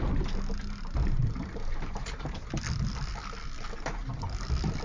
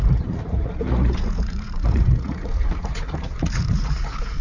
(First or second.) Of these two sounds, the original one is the first